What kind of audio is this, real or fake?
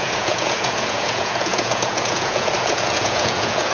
fake